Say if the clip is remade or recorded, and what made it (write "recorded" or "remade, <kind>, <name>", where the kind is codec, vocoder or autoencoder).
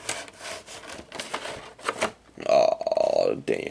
recorded